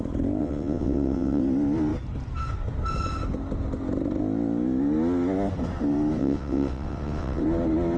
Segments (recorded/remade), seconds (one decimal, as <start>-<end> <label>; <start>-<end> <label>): 0.0-0.4 recorded; 0.4-1.4 remade; 1.4-6.2 recorded; 6.2-7.4 remade; 7.4-8.0 recorded